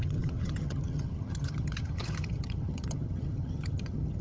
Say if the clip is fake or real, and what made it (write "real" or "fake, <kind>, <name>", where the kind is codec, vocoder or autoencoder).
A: fake, vocoder, HiFi-GAN